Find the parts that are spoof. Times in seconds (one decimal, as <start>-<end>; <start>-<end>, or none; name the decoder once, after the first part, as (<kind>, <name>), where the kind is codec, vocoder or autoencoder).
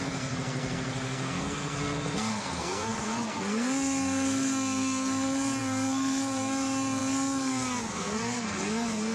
0.0-9.1 (codec, SNAC)